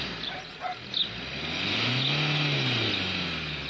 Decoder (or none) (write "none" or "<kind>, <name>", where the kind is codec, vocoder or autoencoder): none